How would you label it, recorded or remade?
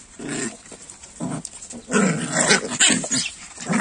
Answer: recorded